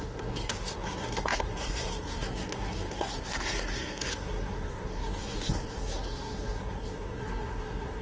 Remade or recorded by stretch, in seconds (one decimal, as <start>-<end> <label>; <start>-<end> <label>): 0.0-8.0 remade